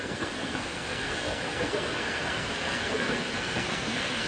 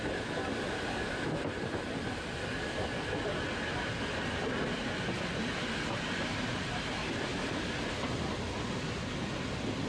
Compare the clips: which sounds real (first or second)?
second